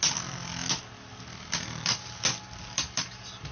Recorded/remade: recorded